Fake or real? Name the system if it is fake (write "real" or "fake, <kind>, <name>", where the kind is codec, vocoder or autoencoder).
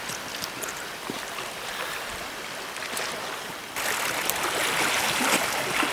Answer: real